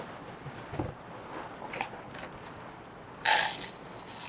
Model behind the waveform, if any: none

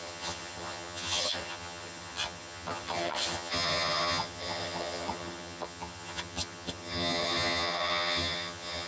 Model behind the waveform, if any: vocoder, HiFi-GAN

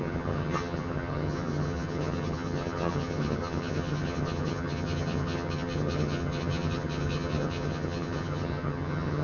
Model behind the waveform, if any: vocoder, HiFi-GAN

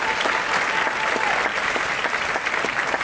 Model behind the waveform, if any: none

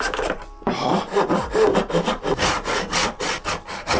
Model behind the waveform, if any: none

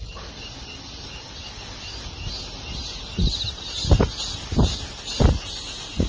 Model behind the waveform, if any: none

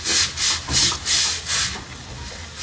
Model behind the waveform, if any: none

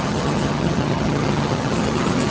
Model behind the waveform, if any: vocoder, HiFi-GAN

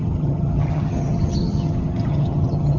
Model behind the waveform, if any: vocoder, HiFi-GAN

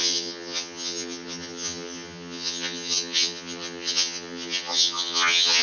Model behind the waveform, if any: vocoder, HiFi-GAN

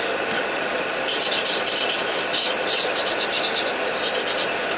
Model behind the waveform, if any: none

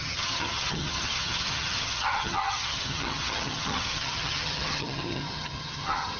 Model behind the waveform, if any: vocoder, HiFi-GAN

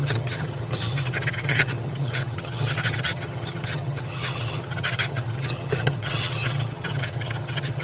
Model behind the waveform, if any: vocoder, HiFi-GAN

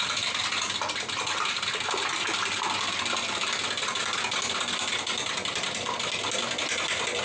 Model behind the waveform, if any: none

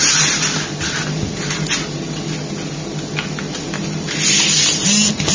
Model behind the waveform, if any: none